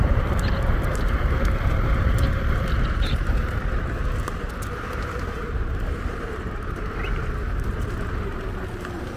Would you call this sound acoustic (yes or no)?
no